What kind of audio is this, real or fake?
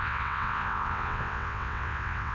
fake